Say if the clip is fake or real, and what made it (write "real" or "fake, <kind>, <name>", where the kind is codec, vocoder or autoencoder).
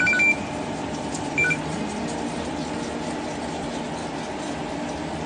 real